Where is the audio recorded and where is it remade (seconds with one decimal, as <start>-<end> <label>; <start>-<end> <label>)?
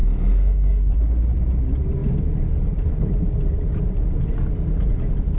0.0-0.9 remade; 0.9-5.4 recorded